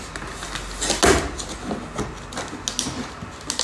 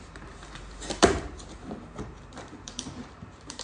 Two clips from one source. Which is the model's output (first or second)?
second